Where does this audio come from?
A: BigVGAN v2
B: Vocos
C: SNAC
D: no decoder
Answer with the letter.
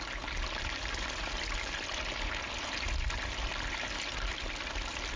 D